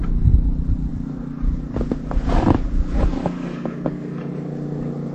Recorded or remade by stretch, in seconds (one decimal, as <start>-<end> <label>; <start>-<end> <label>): 0.0-3.1 recorded; 3.1-4.3 remade; 4.3-5.1 recorded